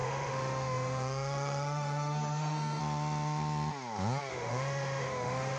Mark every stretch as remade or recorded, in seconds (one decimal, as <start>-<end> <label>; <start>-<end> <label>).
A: 0.0-2.8 remade; 2.8-4.3 recorded; 4.3-5.6 remade